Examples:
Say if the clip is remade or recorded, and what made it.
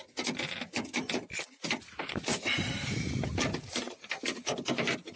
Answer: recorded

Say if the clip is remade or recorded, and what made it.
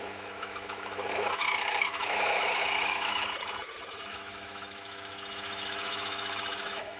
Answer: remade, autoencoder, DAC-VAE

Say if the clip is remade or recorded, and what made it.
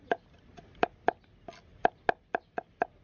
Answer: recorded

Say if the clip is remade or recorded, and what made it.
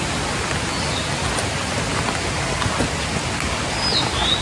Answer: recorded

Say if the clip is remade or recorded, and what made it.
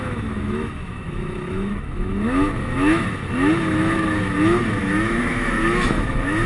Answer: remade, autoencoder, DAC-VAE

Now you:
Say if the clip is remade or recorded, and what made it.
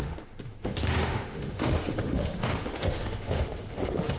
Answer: remade, autoencoder, DAC-VAE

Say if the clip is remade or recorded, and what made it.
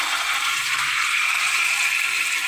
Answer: recorded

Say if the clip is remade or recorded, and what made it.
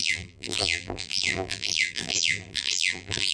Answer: remade, vocoder, BigVGAN v2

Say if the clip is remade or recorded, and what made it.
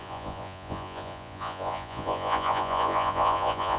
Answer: remade, vocoder, Vocos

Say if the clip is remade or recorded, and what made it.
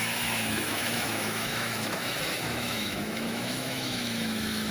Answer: remade, autoencoder, DAC-VAE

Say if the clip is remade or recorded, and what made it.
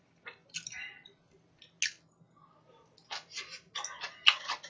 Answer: recorded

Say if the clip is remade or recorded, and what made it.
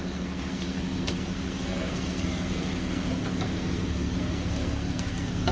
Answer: remade, codec, SNAC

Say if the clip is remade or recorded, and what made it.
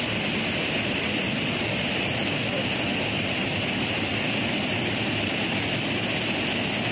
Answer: recorded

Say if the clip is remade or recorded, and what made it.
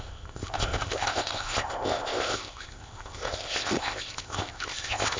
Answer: remade, codec, ZipCodec